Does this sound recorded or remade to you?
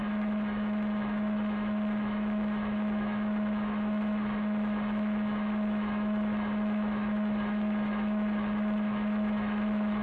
remade